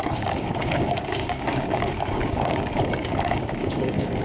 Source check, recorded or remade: remade